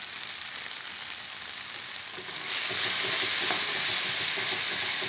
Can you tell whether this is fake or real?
real